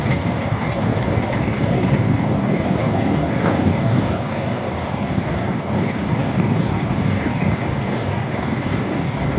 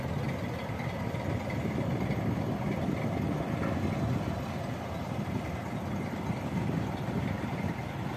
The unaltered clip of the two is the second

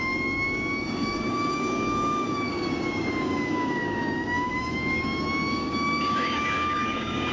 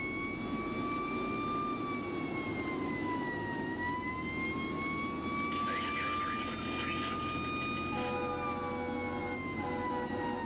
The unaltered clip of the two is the second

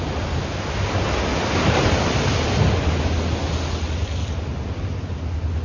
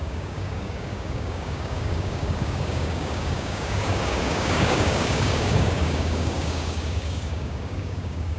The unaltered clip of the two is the first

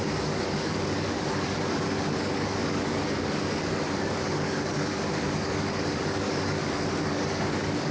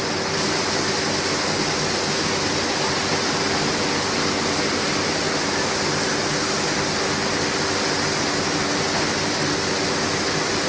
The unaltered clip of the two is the second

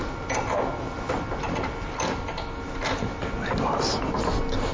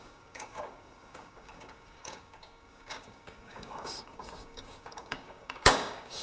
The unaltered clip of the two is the first